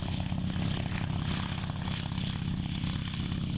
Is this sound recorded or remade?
recorded